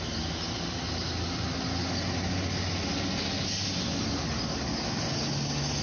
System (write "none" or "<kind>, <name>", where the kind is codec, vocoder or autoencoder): none